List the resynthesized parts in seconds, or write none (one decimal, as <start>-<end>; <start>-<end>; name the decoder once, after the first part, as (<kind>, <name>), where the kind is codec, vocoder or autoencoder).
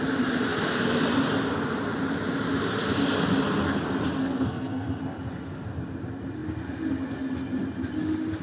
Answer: 4.2-5.0 (codec, SNAC)